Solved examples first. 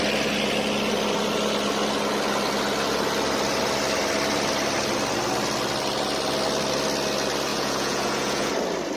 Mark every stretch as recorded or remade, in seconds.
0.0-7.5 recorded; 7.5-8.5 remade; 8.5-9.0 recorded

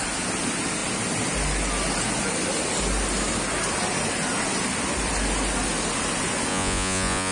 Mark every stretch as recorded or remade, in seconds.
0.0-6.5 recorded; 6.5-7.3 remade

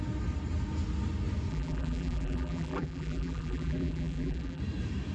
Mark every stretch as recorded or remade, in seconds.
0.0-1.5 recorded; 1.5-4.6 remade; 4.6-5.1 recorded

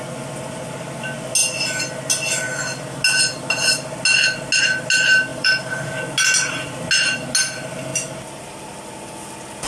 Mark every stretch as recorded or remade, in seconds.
0.0-5.3 recorded; 5.3-6.0 remade; 6.0-9.7 recorded

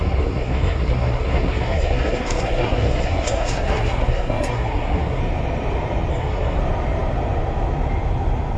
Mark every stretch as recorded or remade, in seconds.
0.0-5.2 remade; 5.2-6.1 recorded; 6.1-6.6 remade; 6.6-8.6 recorded